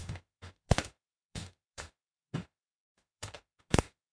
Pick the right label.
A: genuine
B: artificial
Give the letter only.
B